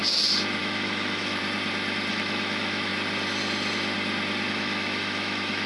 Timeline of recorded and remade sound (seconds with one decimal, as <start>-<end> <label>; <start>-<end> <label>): 0.0-0.6 recorded; 0.6-1.4 remade; 1.4-2.1 recorded; 2.1-2.9 remade; 2.9-4.5 recorded; 4.5-5.7 remade